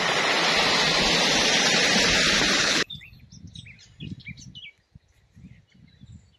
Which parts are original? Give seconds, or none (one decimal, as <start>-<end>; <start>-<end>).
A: 0.0-2.6; 3.2-6.4